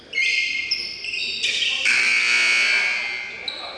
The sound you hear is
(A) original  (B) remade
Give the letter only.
A